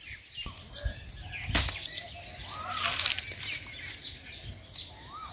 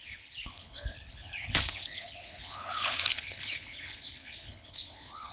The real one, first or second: first